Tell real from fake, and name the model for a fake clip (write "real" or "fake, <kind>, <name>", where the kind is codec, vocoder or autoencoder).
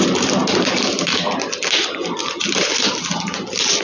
real